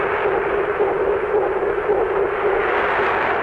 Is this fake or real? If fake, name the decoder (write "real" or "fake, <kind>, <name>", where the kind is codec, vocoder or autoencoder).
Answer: real